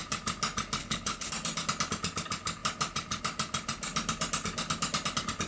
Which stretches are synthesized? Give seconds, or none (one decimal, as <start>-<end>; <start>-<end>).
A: 0.8-1.3